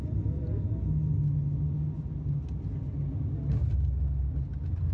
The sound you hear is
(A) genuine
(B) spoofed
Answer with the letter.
A